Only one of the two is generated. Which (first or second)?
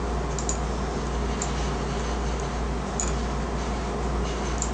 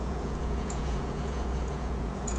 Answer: second